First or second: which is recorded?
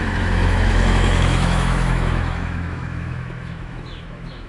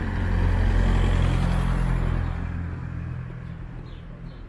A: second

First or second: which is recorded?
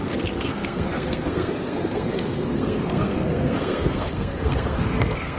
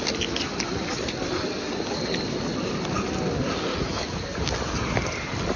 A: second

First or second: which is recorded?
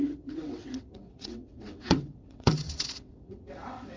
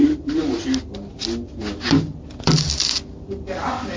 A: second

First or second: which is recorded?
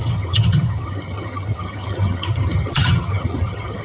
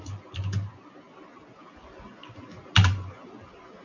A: second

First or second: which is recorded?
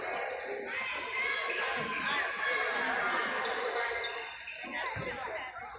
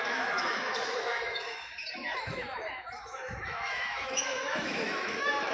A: first